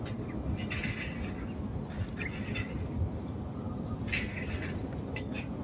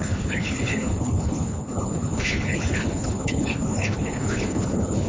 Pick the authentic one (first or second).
first